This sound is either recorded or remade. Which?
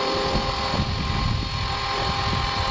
recorded